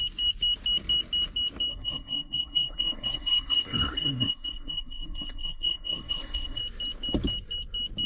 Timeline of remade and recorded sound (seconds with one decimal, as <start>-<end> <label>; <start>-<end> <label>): 0.0-1.7 recorded; 1.7-6.6 remade; 6.6-8.1 recorded